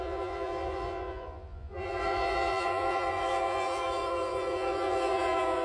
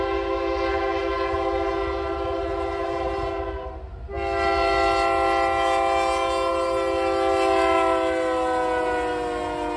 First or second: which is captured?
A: second